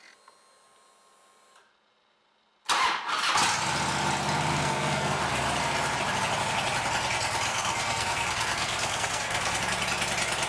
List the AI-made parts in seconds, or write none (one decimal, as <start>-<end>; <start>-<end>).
4.5-5.2; 7.5-9.6

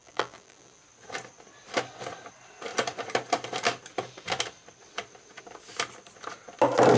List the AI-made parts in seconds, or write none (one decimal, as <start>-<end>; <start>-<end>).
0.0-0.8

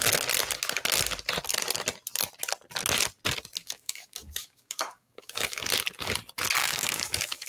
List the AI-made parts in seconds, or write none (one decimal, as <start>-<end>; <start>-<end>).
3.6-5.6; 6.6-7.5

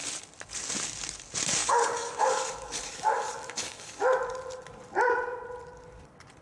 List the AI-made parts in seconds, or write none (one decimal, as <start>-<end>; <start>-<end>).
1.6-4.0

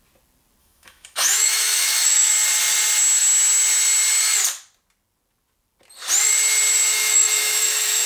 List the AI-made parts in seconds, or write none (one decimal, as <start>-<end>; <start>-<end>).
0.6-2.3; 6.9-8.1

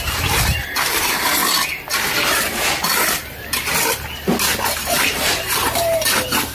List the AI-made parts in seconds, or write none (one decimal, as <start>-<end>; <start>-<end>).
0.0-1.4; 4.7-6.5

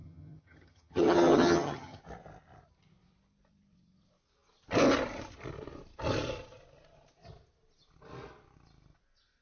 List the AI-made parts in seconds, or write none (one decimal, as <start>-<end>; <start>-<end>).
0.0-2.0